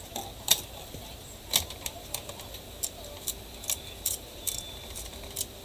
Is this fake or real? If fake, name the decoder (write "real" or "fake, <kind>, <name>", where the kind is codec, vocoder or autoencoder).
real